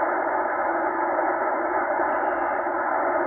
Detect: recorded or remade remade